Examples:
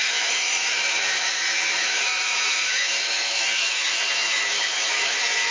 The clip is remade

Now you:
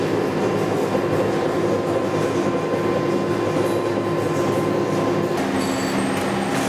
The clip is recorded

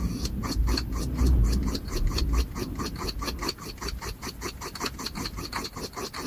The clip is recorded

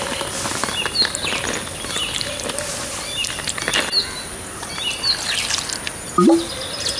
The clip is recorded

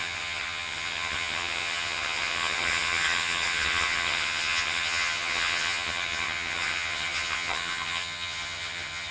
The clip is remade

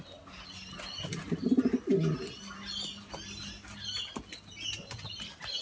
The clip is recorded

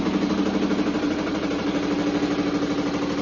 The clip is recorded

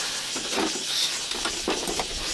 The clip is recorded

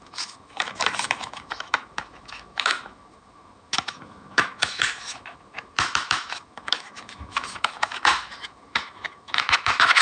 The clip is remade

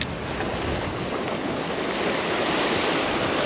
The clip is recorded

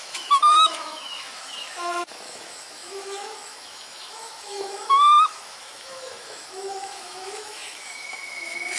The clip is remade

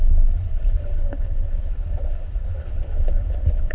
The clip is remade